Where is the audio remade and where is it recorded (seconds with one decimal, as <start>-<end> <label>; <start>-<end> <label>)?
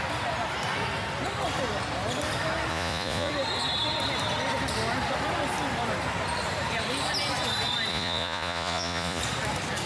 0.0-2.7 recorded; 2.7-3.3 remade; 3.3-7.9 recorded; 7.9-9.2 remade; 9.2-9.9 recorded